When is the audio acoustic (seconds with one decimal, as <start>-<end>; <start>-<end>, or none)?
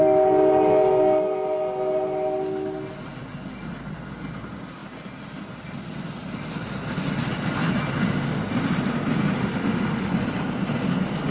0.0-9.4; 10.1-11.3